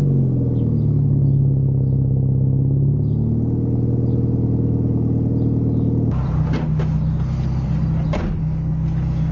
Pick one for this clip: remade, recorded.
recorded